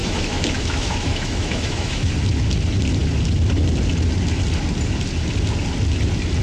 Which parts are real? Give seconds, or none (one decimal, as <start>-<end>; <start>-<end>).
2.1-6.4